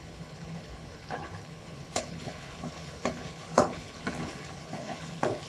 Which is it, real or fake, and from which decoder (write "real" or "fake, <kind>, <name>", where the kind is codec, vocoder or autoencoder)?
fake, codec, HILCodec